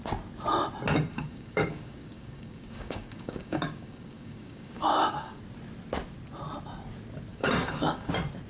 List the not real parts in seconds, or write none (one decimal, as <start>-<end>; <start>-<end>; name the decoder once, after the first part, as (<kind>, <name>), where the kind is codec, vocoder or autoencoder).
1.1-5.4 (codec, DAC); 7.3-8.1